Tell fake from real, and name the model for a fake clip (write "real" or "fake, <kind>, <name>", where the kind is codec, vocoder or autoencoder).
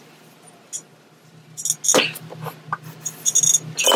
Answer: real